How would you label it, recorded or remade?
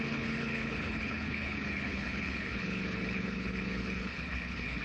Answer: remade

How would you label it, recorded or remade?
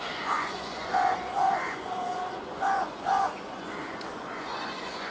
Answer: remade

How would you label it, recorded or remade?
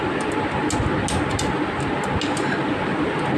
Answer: recorded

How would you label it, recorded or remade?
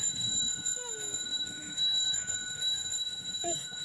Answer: remade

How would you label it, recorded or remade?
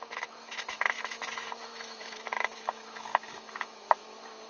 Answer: remade